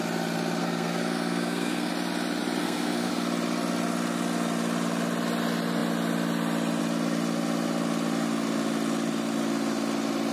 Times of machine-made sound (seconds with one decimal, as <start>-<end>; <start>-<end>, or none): 0.6-1.9; 2.6-3.1